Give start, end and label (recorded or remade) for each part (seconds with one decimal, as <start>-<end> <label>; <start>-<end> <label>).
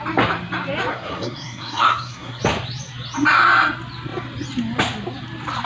0.0-0.9 recorded; 0.9-2.4 remade; 2.4-5.6 recorded